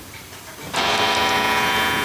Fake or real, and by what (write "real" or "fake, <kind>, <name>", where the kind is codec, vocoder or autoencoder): real